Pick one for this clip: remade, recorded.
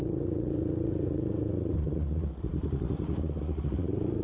remade